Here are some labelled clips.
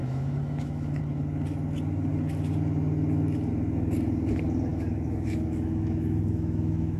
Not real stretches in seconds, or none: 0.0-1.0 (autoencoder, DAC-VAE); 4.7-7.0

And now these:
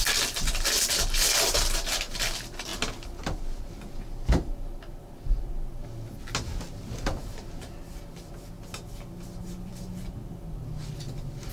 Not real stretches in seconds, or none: none

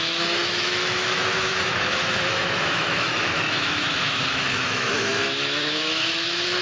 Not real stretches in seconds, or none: 0.0-6.6 (autoencoder, DAC-VAE)

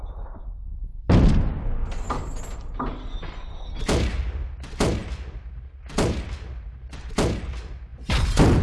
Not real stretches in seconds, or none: none